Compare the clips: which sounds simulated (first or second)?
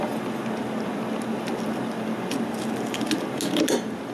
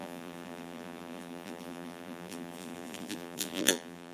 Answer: second